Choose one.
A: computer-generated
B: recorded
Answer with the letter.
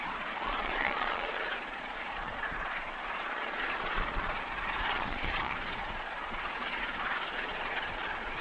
A